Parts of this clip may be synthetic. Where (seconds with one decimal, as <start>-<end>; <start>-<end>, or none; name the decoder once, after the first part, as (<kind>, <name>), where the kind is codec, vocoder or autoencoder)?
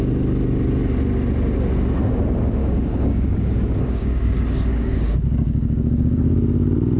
2.6-7.0 (codec, DAC)